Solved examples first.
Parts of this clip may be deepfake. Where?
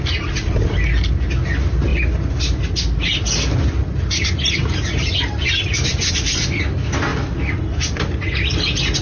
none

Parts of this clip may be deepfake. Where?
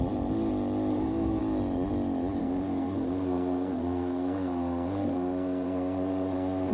0.9-1.4 (codec, SNAC); 2.4-6.7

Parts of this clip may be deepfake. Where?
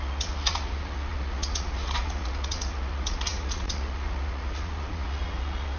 0.0-5.8 (vocoder, Vocos)